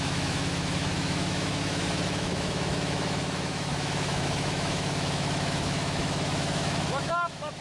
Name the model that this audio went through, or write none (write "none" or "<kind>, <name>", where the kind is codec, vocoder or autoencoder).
autoencoder, DAC-VAE